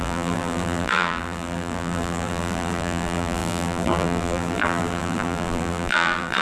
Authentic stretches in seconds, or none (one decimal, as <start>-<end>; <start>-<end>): none